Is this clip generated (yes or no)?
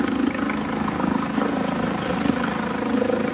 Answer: no